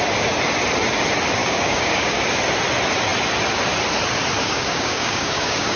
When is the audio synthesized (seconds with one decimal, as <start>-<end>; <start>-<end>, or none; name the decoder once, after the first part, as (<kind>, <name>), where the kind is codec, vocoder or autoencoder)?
1.4-2.2 (codec, DAC); 4.4-5.8